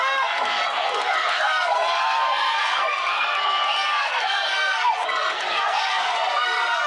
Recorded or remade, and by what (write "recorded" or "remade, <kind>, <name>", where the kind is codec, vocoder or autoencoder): remade, codec, SNAC